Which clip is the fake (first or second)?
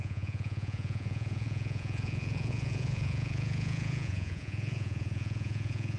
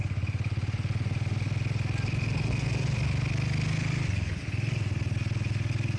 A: first